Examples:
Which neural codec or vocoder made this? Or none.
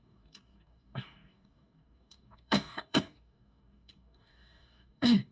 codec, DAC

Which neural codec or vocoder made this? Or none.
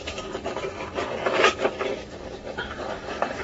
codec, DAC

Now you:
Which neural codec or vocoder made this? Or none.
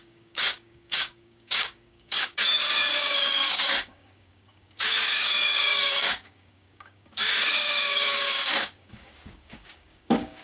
codec, DAC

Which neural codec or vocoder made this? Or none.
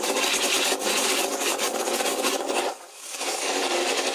codec, DAC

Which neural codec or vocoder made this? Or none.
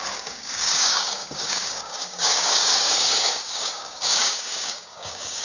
codec, DAC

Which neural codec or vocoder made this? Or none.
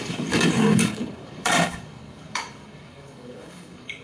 codec, DAC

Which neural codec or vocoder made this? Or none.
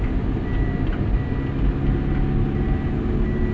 none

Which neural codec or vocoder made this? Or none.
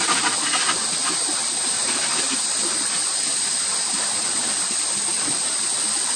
none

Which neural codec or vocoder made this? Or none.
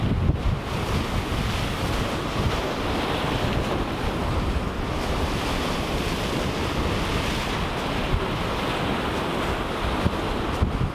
none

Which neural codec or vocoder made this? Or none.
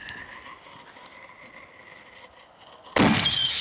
none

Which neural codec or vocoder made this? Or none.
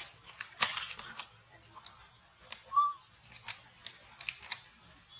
none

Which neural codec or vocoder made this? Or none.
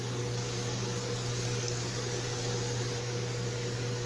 codec, DAC